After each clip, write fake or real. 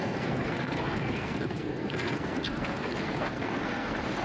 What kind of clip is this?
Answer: fake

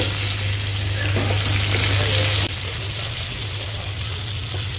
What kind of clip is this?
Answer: real